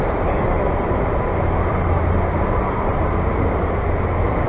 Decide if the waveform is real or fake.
real